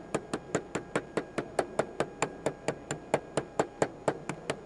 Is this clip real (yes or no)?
yes